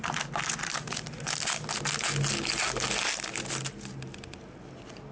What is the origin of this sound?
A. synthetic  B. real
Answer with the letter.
B